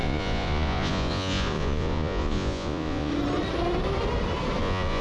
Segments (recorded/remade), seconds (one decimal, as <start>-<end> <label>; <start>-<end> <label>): 0.0-3.1 remade; 3.1-4.6 recorded; 4.6-5.0 remade